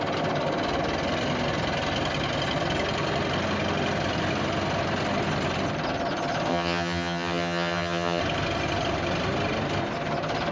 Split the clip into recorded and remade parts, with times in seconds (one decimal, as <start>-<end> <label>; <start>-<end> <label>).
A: 0.0-6.5 recorded; 6.5-8.2 remade; 8.2-10.5 recorded